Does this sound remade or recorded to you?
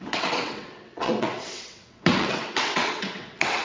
remade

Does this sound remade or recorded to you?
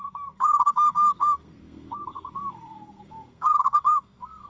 remade